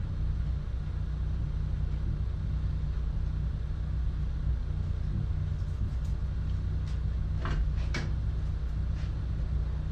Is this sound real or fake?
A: real